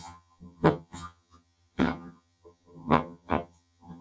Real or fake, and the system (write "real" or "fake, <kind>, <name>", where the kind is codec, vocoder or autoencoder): fake, vocoder, HiFi-GAN